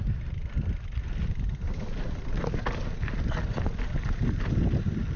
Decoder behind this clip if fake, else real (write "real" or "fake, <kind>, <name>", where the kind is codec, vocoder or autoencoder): real